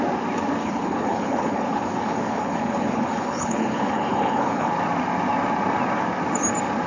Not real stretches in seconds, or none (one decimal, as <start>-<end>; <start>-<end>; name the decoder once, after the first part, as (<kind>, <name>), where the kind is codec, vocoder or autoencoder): 0.6-4.7 (codec, HILCodec)